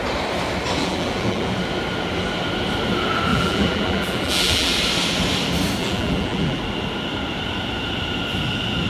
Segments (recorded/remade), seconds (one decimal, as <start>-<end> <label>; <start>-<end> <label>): 0.0-0.8 recorded; 0.8-1.5 remade; 1.5-3.3 recorded; 3.3-4.7 remade; 4.7-5.8 recorded; 5.8-6.6 remade; 6.6-8.9 recorded